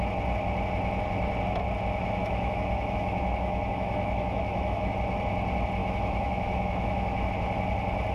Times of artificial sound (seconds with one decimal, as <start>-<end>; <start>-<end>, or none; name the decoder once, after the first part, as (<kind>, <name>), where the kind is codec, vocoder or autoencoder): 2.2-4.9 (autoencoder, DAC-VAE); 5.8-7.3